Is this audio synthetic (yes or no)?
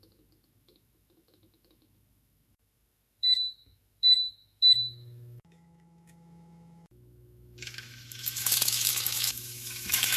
yes